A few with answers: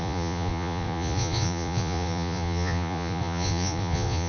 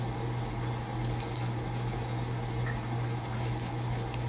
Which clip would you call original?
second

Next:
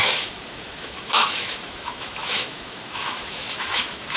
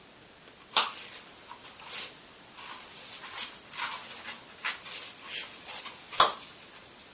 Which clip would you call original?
second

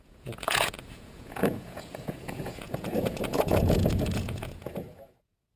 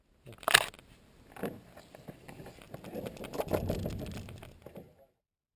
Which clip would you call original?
second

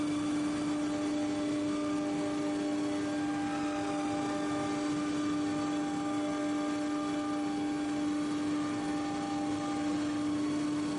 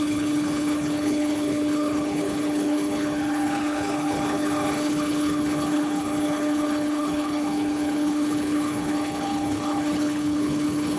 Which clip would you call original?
first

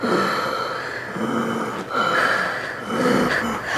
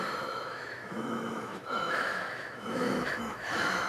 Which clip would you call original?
first